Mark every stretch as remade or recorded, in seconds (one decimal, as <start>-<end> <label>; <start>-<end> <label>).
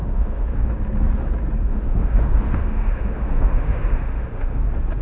0.0-0.7 remade; 0.7-1.6 recorded; 1.6-4.6 remade; 4.6-5.0 recorded